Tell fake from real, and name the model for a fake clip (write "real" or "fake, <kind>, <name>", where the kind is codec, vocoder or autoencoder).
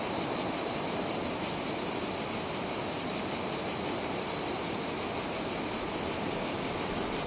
real